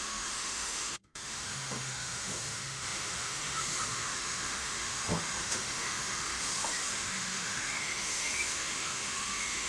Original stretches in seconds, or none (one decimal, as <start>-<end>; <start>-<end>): none